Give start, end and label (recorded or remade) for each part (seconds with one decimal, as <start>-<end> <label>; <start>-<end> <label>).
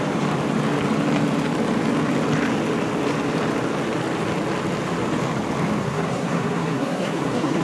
0.0-5.8 recorded; 5.8-7.6 remade